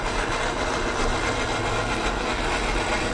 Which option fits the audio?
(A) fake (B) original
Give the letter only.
B